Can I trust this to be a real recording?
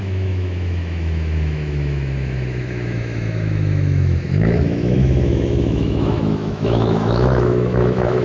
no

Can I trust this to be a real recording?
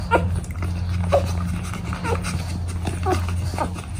yes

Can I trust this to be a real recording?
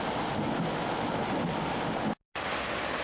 yes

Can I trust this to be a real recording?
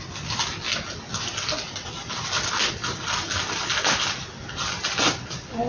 yes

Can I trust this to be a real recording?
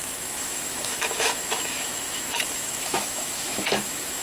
no